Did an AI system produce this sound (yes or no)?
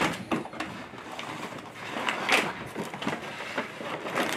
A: no